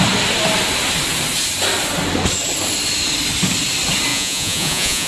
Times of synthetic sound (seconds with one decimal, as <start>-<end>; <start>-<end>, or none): 4.1-5.1